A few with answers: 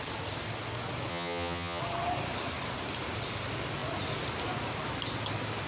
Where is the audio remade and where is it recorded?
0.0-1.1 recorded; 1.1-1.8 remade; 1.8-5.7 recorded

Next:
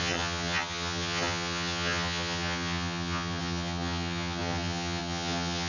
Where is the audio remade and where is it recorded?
0.0-5.7 remade

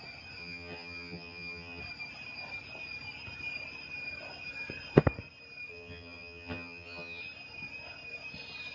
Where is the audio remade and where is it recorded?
0.0-0.4 recorded; 0.4-1.8 remade; 1.8-5.7 recorded; 5.7-7.2 remade; 7.2-8.7 recorded

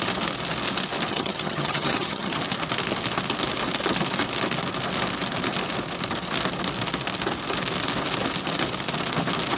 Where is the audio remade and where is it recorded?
0.0-1.1 recorded; 1.1-2.4 remade; 2.4-9.6 recorded

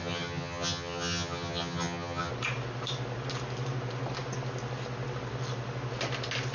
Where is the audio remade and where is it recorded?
0.0-2.3 remade; 2.3-6.5 recorded

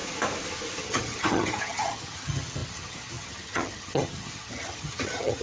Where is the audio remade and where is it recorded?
0.0-0.8 recorded; 0.8-5.4 remade